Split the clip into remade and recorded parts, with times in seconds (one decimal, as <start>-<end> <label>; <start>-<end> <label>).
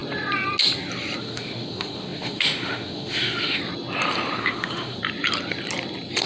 0.0-1.2 recorded; 1.2-3.6 remade; 3.6-4.4 recorded; 4.4-5.0 remade; 5.0-6.3 recorded